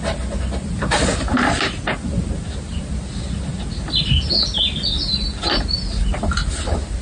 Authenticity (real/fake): real